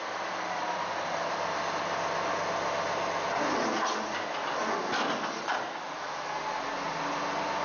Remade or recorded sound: recorded